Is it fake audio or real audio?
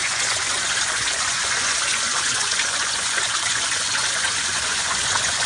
fake